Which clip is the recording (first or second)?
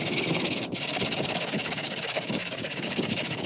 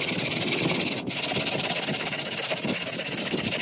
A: second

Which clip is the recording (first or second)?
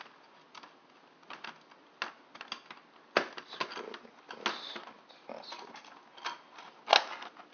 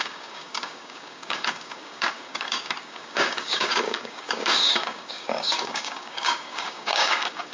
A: first